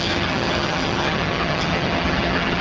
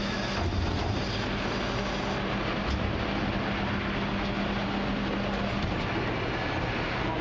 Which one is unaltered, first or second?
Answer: second